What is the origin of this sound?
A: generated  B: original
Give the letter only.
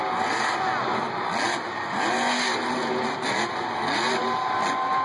B